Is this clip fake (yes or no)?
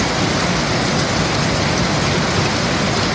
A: no